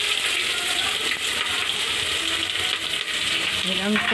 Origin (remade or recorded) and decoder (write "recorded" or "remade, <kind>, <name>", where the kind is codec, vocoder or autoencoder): recorded